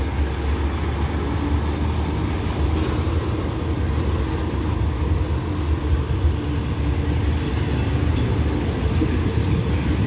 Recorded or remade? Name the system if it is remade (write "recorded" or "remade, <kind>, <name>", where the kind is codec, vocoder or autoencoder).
recorded